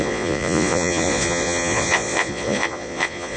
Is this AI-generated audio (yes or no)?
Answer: yes